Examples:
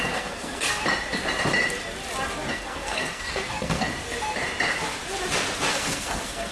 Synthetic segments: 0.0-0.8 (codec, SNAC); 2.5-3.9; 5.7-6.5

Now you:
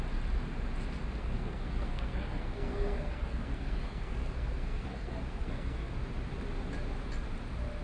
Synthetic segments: 1.2-5.9 (codec, SNAC)

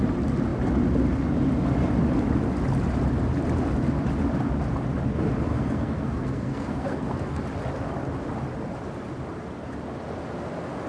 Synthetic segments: 5.5-7.4 (codec, SNAC)

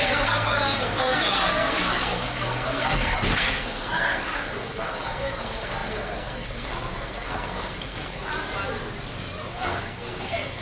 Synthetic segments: 0.0-8.3 (codec, SNAC); 9.5-10.6